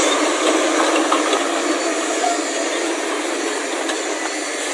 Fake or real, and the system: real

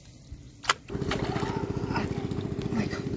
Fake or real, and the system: real